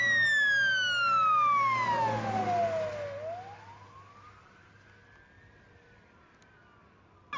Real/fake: real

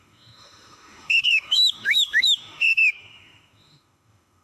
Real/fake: fake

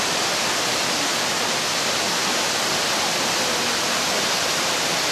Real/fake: real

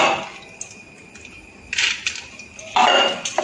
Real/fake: real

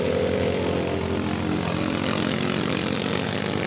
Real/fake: real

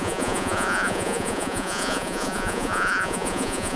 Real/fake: fake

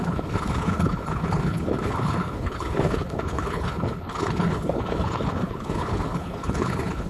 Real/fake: fake